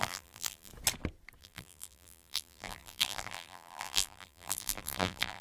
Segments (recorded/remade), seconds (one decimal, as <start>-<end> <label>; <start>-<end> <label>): 0.0-0.7 remade; 0.7-1.4 recorded; 1.4-5.4 remade